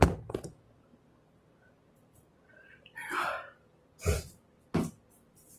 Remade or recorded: remade